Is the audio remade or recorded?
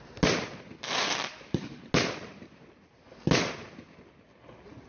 recorded